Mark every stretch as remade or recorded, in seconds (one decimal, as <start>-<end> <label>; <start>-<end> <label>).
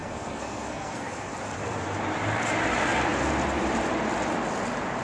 0.0-1.3 remade; 1.3-5.0 recorded